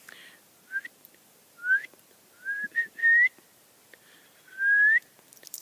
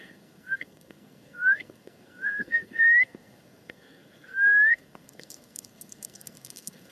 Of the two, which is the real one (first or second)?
first